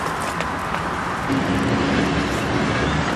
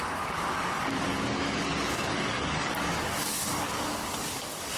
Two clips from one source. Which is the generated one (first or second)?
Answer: second